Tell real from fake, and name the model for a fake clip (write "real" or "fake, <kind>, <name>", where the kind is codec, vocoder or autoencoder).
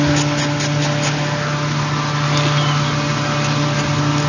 real